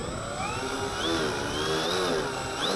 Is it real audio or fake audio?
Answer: real